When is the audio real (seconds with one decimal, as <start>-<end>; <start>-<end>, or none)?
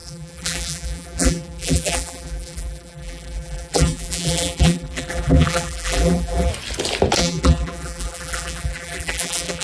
6.5-7.2